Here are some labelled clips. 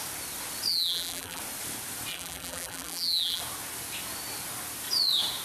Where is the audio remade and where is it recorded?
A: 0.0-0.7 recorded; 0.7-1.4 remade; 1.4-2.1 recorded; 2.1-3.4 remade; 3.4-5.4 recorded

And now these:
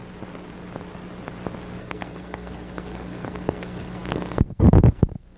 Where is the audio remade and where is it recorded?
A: 0.0-1.8 recorded; 1.8-5.4 remade